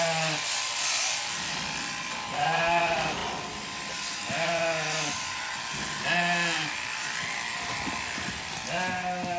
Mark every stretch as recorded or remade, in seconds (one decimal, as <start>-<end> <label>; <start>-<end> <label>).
0.0-9.4 recorded